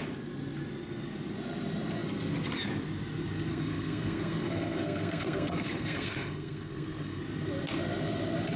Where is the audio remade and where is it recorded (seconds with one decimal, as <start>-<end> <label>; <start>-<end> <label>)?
0.0-3.5 recorded; 3.5-7.2 remade; 7.2-8.6 recorded